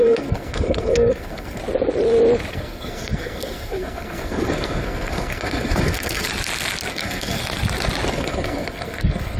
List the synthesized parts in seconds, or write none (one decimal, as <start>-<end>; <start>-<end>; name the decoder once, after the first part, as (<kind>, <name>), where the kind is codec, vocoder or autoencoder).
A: 0.0-1.6 (codec, SNAC); 2.5-6.3; 6.9-7.4; 8.1-9.4